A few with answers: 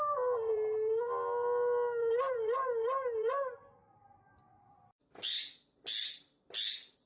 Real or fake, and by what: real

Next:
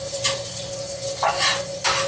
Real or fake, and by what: real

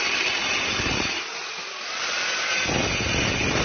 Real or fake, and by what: real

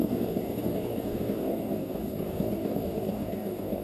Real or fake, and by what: fake, codec, DAC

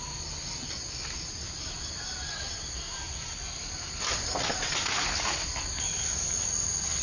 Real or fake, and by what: real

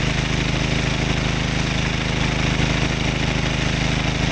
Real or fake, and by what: real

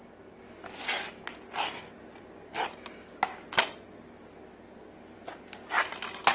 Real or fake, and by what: real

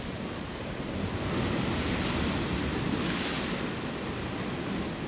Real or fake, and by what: real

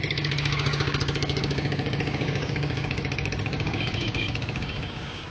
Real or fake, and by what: fake, codec, DAC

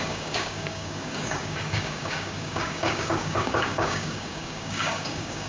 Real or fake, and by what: fake, codec, DAC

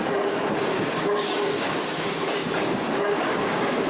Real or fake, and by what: fake, codec, DAC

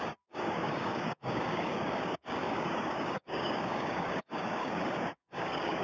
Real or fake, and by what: fake, codec, DAC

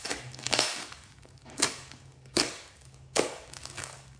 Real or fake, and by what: fake, codec, DAC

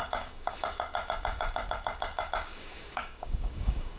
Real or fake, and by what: fake, codec, DAC